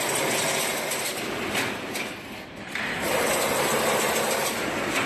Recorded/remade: recorded